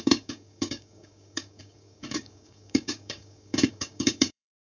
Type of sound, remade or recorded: remade